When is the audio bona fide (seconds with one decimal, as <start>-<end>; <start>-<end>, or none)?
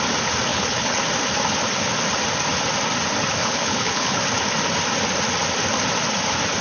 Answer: 0.0-0.5; 1.0-3.4; 4.2-6.6